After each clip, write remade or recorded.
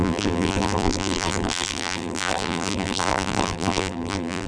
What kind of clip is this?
remade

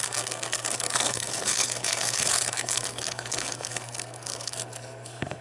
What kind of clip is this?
remade